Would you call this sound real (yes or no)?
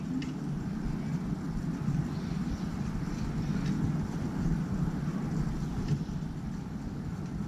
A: yes